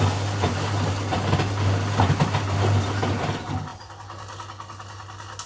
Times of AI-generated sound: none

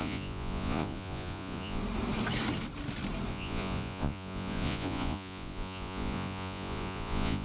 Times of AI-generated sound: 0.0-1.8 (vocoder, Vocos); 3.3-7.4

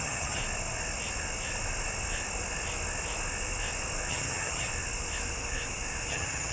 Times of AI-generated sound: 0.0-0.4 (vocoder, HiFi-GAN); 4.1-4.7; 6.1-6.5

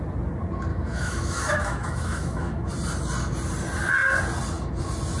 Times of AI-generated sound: 0.7-2.7 (autoencoder, DAC-VAE)

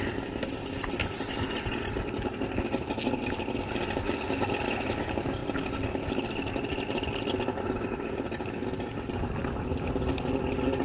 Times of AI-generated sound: none